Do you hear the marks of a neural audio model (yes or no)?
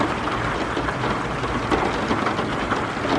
no